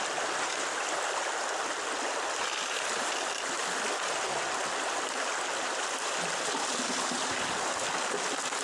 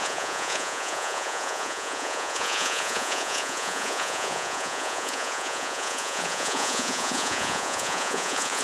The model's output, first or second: second